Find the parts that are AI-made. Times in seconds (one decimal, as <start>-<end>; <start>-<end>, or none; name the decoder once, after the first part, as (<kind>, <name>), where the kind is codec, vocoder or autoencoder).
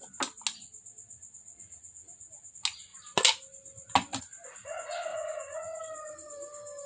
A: 1.4-2.5 (vocoder, Vocos); 5.1-5.8